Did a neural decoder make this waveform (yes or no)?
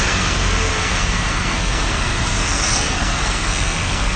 yes